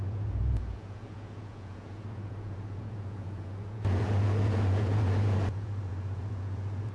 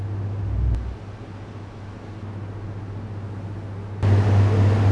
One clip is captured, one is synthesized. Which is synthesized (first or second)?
first